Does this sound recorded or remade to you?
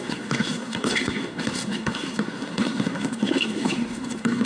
remade